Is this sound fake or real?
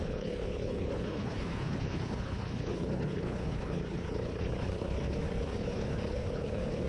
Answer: fake